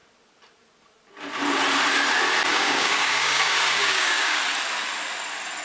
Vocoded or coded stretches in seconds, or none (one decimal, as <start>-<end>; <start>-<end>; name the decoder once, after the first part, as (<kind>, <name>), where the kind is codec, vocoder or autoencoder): 2.5-4.4 (codec, DAC)